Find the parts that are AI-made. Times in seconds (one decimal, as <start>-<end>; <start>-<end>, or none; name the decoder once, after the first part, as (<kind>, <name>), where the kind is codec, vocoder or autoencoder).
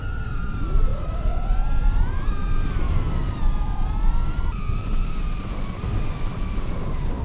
0.0-2.4 (vocoder, BigVGAN v2); 6.7-7.2